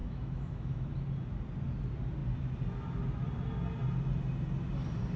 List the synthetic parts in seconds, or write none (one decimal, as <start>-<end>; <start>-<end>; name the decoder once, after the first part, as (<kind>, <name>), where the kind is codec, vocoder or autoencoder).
0.0-0.9 (autoencoder, DAC-VAE)